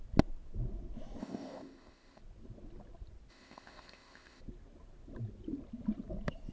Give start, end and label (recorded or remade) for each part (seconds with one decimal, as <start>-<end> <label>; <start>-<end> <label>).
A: 0.0-1.2 recorded; 1.2-2.2 remade; 2.2-3.3 recorded; 3.3-4.4 remade; 4.4-6.5 recorded